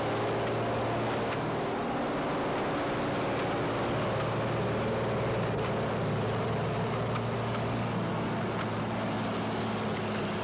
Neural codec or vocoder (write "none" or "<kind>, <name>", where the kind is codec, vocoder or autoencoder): none